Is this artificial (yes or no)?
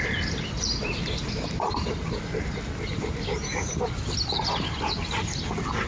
no